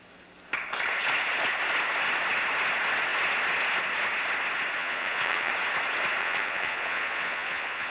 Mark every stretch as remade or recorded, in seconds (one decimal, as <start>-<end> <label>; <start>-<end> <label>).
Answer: 0.0-4.8 recorded; 4.8-5.5 remade; 5.5-6.2 recorded; 6.2-7.9 remade